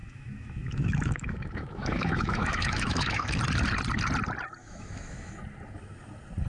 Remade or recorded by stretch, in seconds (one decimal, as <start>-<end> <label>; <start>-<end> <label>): 0.0-3.4 remade; 3.4-4.6 recorded; 4.6-5.3 remade; 5.3-6.5 recorded